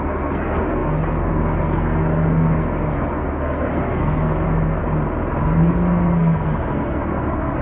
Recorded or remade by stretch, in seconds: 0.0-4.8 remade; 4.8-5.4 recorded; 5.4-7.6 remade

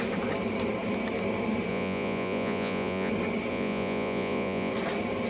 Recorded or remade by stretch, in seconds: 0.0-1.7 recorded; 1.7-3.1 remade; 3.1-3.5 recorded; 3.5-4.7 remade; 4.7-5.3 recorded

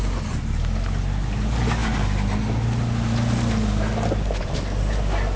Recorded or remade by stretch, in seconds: 0.0-5.4 recorded

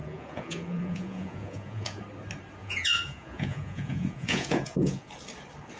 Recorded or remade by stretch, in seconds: 0.0-2.0 remade; 2.0-2.6 recorded; 2.6-5.1 remade; 5.1-5.8 recorded